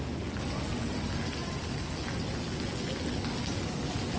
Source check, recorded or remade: recorded